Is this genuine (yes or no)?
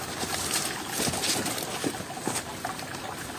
yes